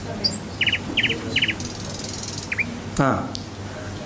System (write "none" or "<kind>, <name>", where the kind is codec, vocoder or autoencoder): none